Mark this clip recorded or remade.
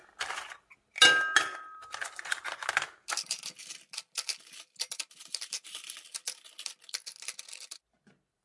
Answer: recorded